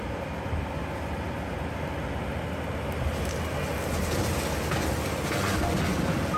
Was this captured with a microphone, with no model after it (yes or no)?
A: yes